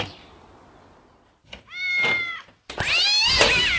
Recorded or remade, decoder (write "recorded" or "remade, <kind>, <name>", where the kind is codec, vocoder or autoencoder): recorded